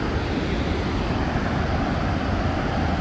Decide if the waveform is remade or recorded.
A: recorded